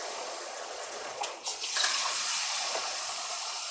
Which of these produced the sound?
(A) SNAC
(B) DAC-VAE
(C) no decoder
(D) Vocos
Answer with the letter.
D